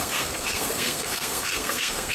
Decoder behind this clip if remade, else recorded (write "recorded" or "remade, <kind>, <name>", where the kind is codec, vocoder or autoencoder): remade, codec, SNAC